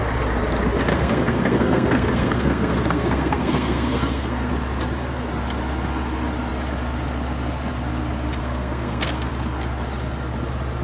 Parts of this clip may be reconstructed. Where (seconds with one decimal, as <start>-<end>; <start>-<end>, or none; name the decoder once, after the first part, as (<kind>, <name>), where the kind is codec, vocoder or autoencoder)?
0.9-4.5 (codec, SNAC); 8.4-9.3